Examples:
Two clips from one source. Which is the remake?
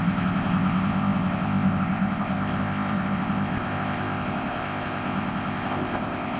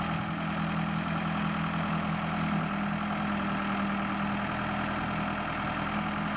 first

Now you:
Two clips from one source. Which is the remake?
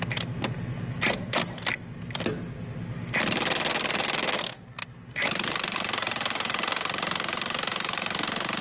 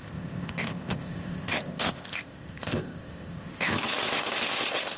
second